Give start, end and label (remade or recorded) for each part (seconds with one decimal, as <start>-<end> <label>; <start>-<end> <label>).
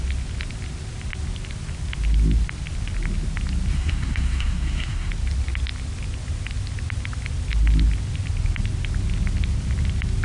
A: 0.0-3.7 recorded; 3.7-5.1 remade; 5.1-10.2 recorded